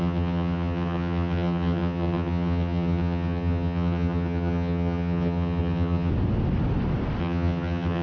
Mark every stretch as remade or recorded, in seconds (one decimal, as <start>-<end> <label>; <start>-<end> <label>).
0.0-6.1 remade; 6.1-7.2 recorded; 7.2-8.0 remade